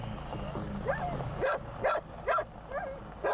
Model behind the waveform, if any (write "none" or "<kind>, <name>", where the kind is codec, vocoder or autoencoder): none